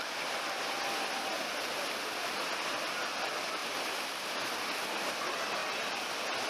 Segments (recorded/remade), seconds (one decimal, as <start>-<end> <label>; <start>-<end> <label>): 0.0-6.5 recorded